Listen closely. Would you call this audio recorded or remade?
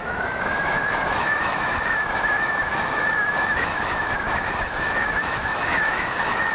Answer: remade